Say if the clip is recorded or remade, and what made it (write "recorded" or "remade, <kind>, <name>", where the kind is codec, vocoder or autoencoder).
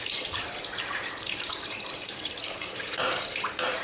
remade, vocoder, BigVGAN v2